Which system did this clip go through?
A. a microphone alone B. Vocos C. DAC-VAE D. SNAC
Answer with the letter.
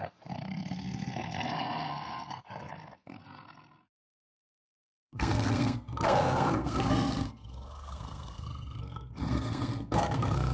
D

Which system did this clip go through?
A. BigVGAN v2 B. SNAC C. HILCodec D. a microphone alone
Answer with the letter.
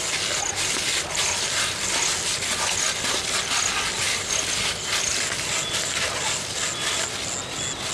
D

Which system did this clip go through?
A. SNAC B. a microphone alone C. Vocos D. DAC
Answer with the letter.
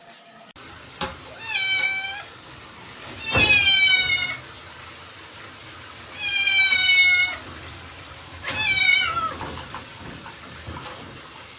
B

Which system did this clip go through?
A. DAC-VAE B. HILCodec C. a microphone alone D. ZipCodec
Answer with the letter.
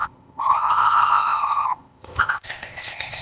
D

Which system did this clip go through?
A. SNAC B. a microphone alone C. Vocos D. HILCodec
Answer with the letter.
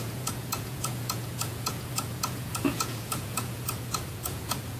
C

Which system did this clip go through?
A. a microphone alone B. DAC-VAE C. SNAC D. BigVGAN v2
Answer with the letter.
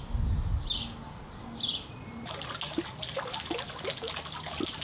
A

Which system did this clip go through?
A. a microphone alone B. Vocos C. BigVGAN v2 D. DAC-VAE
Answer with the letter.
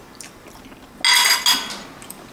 A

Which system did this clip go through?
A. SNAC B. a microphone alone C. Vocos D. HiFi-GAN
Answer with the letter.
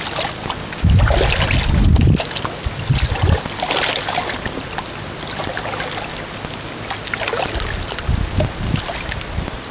B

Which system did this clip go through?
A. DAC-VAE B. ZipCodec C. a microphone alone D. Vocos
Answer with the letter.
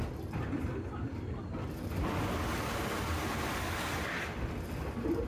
C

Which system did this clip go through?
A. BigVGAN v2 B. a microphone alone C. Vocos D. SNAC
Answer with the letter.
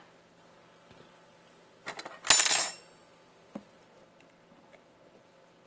B